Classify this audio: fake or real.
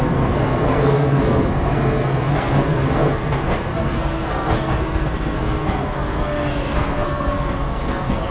fake